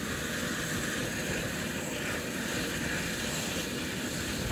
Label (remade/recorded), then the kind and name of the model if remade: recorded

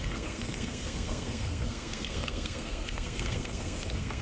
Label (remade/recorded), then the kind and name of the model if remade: remade, codec, SNAC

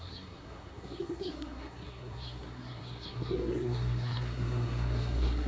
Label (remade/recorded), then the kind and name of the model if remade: remade, codec, SNAC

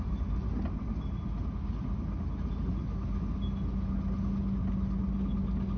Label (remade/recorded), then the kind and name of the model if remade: recorded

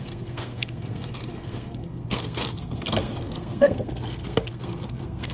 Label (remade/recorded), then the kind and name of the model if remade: remade, codec, SNAC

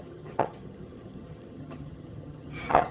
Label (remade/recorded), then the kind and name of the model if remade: remade, vocoder, HiFi-GAN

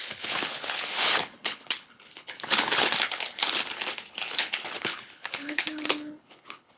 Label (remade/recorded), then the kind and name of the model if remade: remade, codec, HILCodec